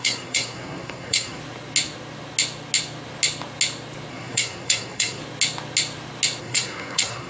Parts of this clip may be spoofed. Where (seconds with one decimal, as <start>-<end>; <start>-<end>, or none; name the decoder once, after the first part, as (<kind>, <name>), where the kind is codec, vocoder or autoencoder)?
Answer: 0.0-1.4 (codec, SNAC); 4.1-5.2; 6.4-7.3